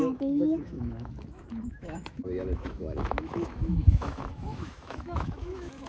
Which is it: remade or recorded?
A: remade